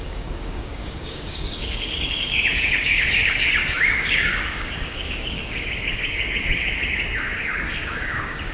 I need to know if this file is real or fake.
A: fake